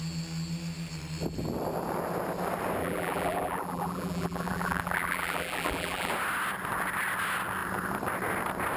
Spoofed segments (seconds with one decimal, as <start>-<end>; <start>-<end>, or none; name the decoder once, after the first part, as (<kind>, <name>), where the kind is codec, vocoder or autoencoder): 2.8-6.1 (vocoder, BigVGAN v2)